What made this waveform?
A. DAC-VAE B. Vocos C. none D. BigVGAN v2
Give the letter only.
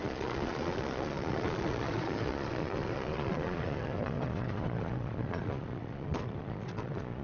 B